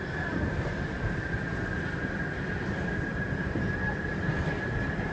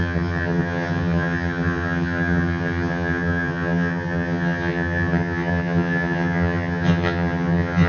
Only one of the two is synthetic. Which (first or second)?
second